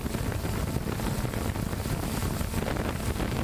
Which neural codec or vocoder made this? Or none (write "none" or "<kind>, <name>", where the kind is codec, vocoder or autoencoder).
none